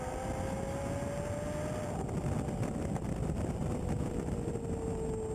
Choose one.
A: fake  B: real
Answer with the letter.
B